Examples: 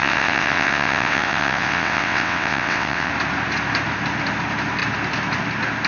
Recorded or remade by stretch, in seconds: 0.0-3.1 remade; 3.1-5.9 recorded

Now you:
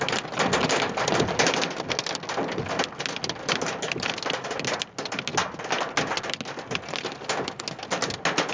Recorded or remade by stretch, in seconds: 0.0-8.5 recorded

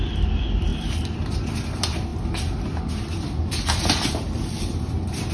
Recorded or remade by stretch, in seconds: 0.0-5.3 recorded

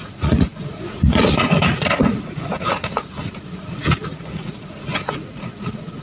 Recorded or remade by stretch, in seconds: 0.0-6.0 remade